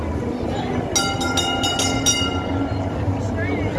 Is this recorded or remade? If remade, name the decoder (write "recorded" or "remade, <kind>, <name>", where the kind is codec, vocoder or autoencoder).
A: recorded